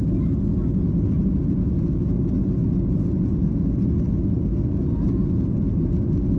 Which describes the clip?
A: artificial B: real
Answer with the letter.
B